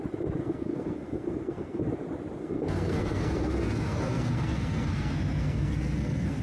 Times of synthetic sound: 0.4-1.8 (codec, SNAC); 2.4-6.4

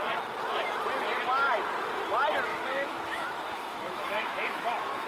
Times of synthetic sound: 2.5-5.1 (autoencoder, DAC-VAE)

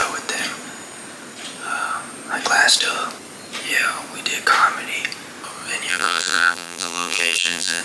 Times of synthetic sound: 5.9-7.8 (vocoder, BigVGAN v2)

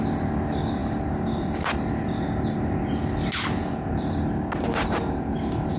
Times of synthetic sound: none